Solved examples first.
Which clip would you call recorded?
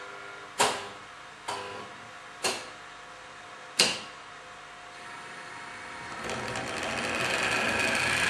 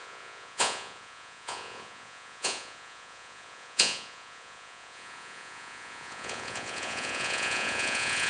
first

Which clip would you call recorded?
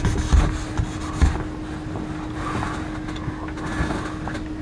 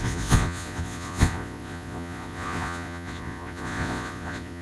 first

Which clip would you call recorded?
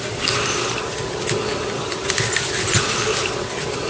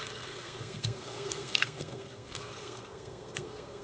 first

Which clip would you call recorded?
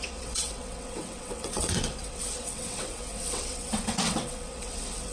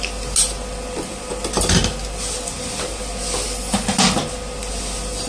second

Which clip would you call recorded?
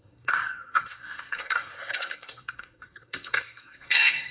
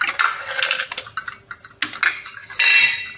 second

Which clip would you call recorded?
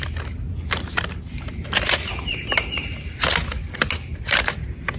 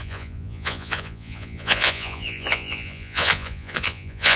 first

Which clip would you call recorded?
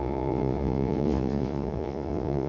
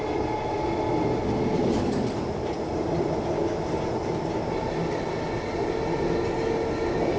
second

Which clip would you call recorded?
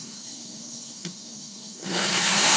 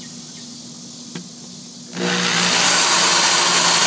second